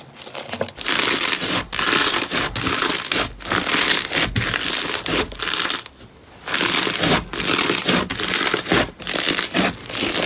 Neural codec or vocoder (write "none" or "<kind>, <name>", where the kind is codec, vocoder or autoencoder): none